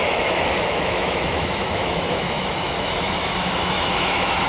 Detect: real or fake fake